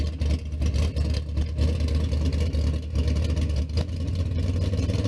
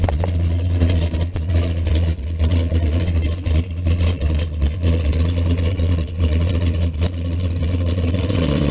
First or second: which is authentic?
first